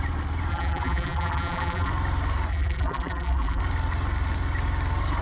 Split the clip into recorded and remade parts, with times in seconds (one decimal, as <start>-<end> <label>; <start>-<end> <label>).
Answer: 0.0-0.5 recorded; 0.5-1.9 remade; 1.9-2.5 recorded; 2.5-3.6 remade; 3.6-5.2 recorded